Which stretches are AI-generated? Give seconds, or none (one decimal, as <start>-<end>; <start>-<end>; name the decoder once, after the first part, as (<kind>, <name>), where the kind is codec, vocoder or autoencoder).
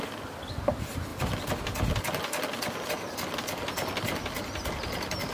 none